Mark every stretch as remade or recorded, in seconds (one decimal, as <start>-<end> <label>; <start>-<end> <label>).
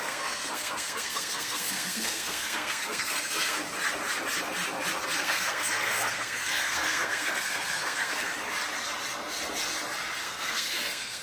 0.0-3.6 remade; 3.6-5.2 recorded; 5.2-8.3 remade; 8.3-10.2 recorded; 10.2-11.2 remade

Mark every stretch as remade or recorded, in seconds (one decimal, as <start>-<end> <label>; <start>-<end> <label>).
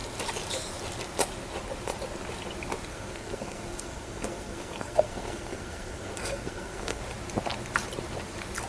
0.0-2.9 recorded; 2.9-7.0 remade; 7.0-8.7 recorded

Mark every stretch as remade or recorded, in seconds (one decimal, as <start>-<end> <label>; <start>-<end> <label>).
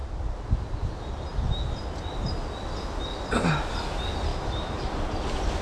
0.0-4.3 recorded; 4.3-4.9 remade; 4.9-5.6 recorded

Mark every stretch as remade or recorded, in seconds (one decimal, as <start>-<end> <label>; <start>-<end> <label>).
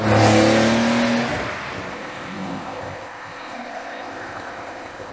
0.0-1.9 recorded; 1.9-5.1 remade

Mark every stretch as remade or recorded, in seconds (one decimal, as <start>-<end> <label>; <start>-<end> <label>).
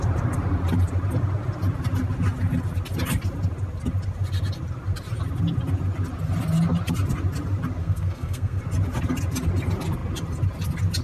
0.0-7.8 recorded; 7.8-8.6 remade; 8.6-11.0 recorded